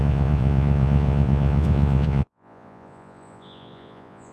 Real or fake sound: fake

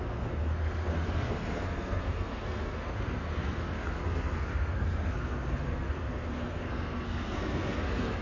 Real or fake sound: fake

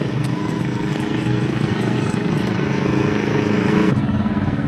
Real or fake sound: fake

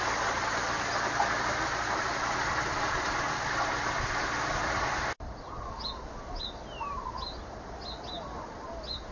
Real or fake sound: real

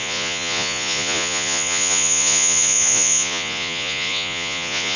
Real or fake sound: fake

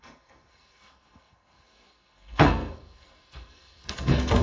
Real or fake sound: fake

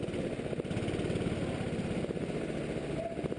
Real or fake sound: real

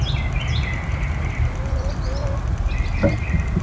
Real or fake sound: real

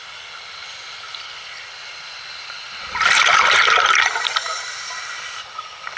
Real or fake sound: real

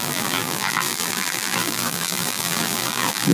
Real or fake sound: fake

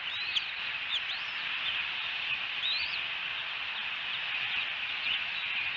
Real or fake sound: real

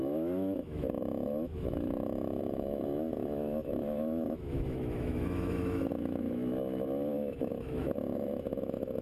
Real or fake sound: fake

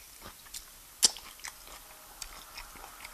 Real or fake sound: real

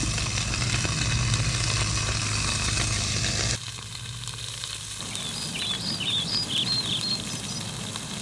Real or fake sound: real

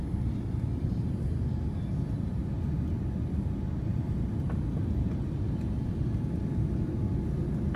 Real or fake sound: real